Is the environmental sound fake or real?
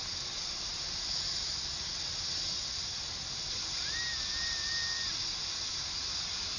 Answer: real